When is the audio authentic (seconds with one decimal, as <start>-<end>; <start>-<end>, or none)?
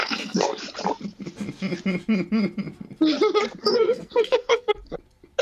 0.6-3.7; 4.7-5.4